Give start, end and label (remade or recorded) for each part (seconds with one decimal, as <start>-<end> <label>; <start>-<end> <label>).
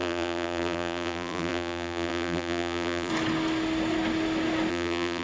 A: 0.0-3.1 remade; 3.1-4.7 recorded; 4.7-5.2 remade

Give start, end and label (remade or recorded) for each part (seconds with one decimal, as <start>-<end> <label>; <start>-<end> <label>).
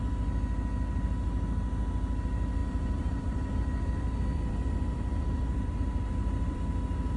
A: 0.0-2.6 recorded; 2.6-6.6 remade; 6.6-7.2 recorded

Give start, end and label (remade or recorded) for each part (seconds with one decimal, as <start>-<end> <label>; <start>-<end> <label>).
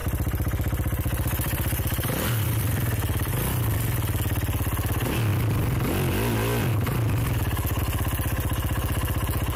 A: 0.0-3.3 remade; 3.3-9.6 recorded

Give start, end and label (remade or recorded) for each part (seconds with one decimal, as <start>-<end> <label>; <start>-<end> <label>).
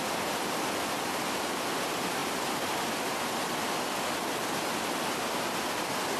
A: 0.0-6.2 recorded